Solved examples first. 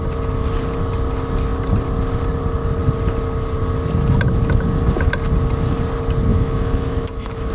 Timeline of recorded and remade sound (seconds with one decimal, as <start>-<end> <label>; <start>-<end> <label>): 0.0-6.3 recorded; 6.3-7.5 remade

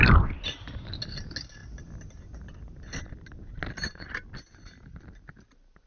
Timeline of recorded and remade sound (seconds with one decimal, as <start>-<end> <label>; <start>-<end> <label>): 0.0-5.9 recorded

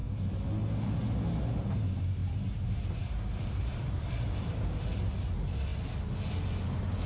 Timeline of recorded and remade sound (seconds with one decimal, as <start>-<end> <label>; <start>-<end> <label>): 0.0-2.2 recorded; 2.2-5.1 remade; 5.1-7.1 recorded

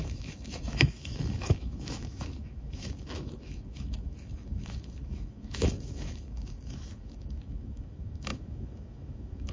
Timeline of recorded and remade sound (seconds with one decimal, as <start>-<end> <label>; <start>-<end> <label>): 0.0-9.5 remade

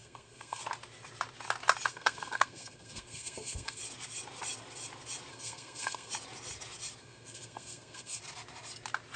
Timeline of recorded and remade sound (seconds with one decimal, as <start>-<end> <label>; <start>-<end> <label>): 0.0-0.6 remade; 0.6-1.9 recorded; 1.9-3.8 remade; 3.8-5.3 recorded; 5.3-6.1 remade; 6.1-7.0 recorded; 7.0-8.2 remade; 8.2-9.2 recorded

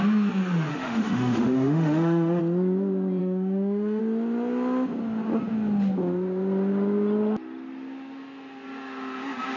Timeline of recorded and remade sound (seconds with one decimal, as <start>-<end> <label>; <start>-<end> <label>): 0.0-0.7 recorded; 0.7-2.4 remade; 2.4-3.2 recorded; 3.2-4.0 remade; 4.0-9.6 recorded

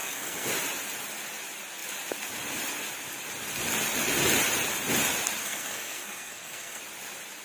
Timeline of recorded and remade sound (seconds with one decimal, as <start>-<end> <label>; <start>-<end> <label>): 0.0-0.5 remade; 0.5-5.4 recorded; 5.4-6.8 remade; 6.8-7.4 recorded